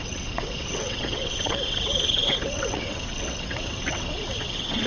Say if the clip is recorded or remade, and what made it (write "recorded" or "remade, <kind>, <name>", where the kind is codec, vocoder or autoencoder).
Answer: remade, vocoder, WaveNeXt